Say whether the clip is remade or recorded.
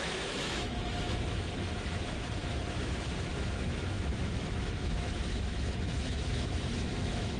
remade